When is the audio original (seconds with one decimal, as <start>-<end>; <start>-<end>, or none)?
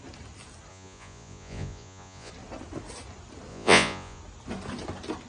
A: 0.0-0.7; 2.3-3.5; 4.2-5.3